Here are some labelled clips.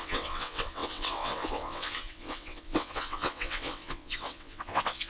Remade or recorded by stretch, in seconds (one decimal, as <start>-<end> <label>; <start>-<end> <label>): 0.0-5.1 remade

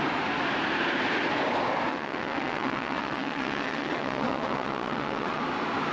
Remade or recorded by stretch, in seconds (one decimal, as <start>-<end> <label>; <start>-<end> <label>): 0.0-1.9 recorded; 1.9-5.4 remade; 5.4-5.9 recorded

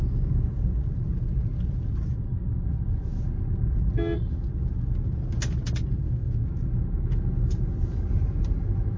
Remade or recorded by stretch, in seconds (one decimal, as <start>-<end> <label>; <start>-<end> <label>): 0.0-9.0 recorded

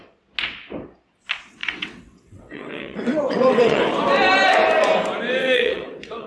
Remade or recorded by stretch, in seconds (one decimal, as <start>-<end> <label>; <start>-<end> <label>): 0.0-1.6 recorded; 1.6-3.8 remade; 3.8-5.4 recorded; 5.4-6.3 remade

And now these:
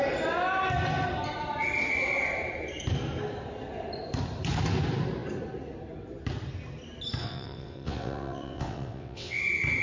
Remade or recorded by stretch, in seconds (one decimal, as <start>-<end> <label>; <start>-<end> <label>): 0.0-7.2 recorded; 7.2-9.4 remade; 9.4-9.8 recorded

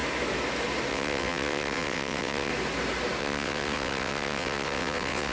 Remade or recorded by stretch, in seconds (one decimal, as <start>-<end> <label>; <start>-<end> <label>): 0.0-0.9 recorded; 0.9-2.5 remade; 2.5-3.2 recorded; 3.2-5.3 remade